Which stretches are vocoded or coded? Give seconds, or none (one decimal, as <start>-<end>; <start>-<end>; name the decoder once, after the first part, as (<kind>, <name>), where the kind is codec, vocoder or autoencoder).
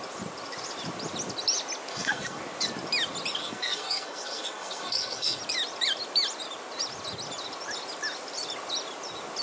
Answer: 1.9-2.4 (codec, SNAC); 3.4-5.4